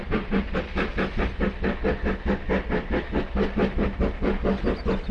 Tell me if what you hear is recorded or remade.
recorded